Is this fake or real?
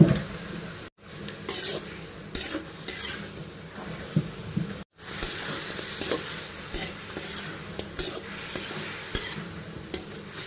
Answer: real